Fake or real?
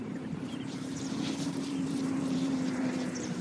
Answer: fake